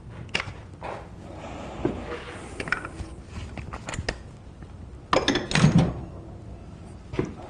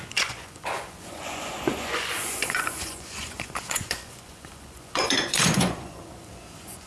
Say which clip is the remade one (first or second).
second